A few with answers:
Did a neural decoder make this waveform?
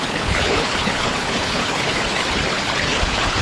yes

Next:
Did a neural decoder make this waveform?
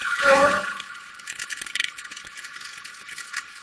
yes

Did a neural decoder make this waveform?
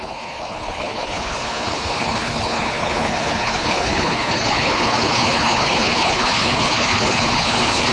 yes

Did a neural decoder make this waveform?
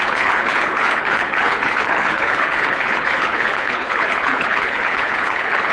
yes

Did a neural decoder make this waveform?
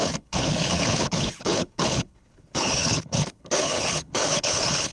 yes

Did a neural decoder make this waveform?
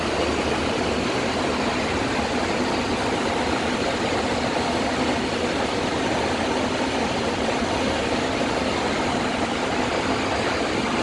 no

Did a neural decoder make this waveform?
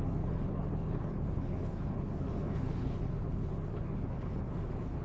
yes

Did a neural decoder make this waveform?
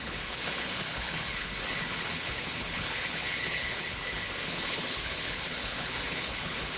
yes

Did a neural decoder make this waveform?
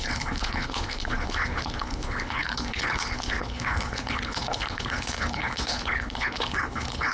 yes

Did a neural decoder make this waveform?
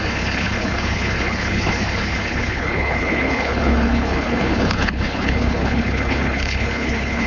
yes